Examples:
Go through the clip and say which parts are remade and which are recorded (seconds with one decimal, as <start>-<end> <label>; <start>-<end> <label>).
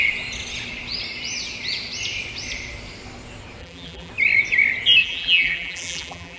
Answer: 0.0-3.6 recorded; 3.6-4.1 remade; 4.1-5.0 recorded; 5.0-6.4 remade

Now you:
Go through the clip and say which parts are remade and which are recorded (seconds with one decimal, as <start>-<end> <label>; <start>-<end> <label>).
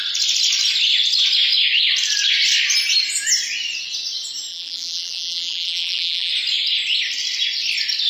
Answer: 0.0-4.5 recorded; 4.5-6.3 remade; 6.3-8.1 recorded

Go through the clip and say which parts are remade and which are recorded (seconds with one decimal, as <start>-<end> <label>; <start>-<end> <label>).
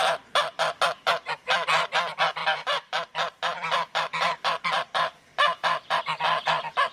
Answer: 0.0-0.8 remade; 0.8-2.4 recorded; 2.4-6.0 remade; 6.0-6.9 recorded